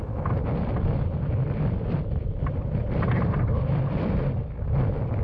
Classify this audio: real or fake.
fake